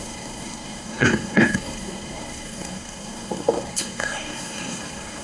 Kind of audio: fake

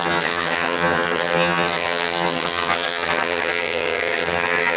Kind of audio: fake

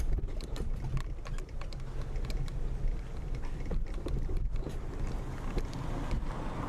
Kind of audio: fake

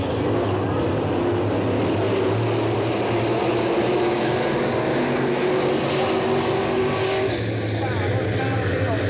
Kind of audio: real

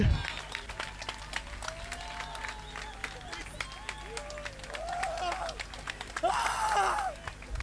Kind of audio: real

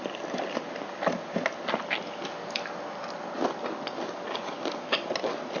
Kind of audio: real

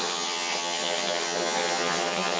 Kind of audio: fake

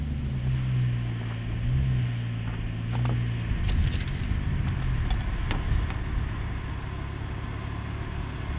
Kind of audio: real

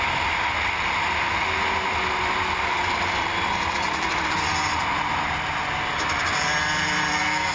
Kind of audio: real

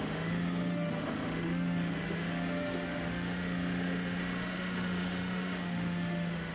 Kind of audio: fake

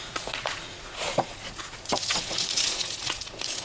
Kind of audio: fake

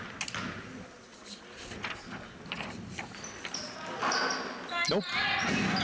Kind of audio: real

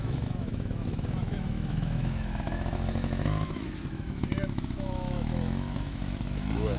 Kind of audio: fake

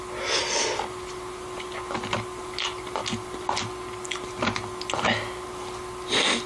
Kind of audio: real